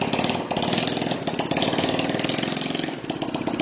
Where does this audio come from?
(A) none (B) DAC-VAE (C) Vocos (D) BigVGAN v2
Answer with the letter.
A